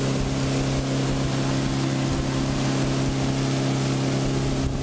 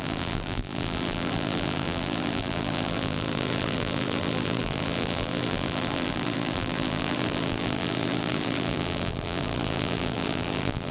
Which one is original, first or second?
first